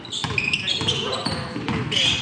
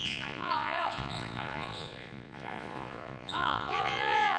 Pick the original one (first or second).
first